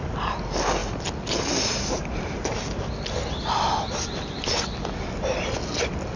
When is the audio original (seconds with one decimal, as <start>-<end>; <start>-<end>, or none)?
0.0-6.2